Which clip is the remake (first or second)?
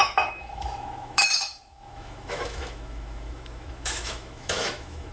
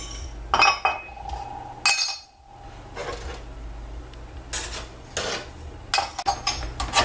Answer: first